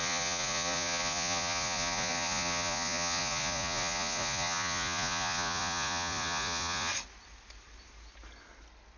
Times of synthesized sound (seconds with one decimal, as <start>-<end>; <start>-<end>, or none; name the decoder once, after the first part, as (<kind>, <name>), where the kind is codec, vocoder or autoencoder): 0.0-6.9 (vocoder, Vocos)